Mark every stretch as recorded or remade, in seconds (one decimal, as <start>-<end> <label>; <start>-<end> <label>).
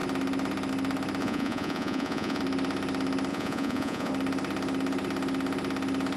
0.0-1.2 recorded; 1.2-2.4 remade; 2.4-3.3 recorded; 3.3-4.1 remade; 4.1-6.2 recorded